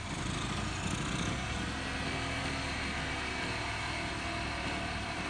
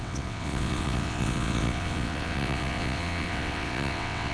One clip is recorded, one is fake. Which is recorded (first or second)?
first